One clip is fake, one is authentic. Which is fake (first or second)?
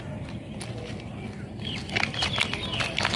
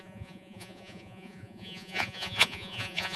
second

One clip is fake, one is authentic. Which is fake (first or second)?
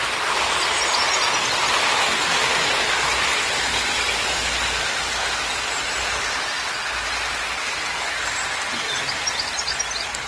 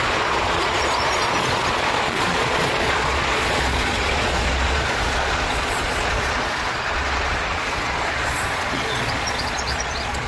second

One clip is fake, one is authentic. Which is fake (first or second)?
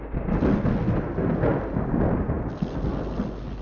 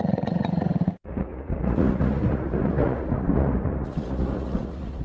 second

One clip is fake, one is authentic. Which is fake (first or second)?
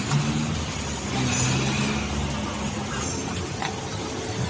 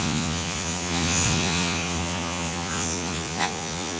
second